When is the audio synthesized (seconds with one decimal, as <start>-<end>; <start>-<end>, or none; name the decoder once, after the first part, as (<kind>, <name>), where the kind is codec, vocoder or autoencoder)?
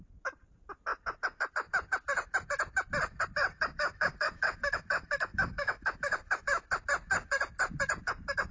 3.7-6.6 (autoencoder, DAC-VAE)